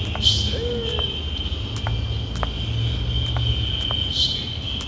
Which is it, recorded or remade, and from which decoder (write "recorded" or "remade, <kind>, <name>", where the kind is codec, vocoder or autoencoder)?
recorded